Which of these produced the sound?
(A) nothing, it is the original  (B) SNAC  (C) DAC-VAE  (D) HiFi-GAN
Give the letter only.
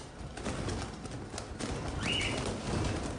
A